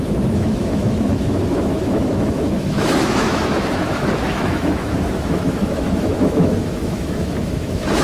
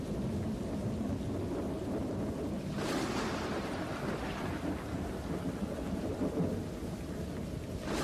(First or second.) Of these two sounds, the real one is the second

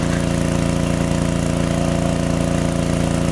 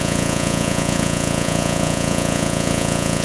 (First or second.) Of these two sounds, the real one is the first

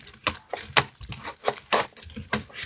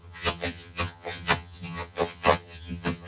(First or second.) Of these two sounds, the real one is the first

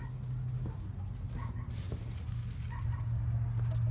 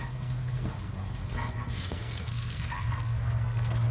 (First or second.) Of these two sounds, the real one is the first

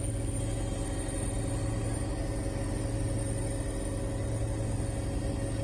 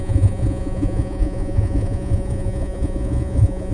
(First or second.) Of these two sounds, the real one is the first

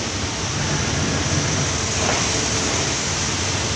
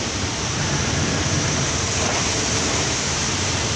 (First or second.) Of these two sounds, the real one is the first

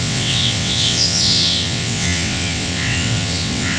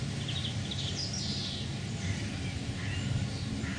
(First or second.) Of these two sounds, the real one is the second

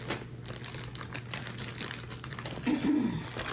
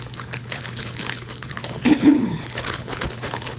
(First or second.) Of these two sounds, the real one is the first